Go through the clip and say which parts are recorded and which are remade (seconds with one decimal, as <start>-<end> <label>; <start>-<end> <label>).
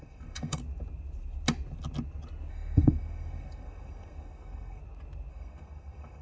0.0-0.6 remade; 0.6-2.5 recorded; 2.5-4.8 remade; 4.8-5.3 recorded; 5.3-6.2 remade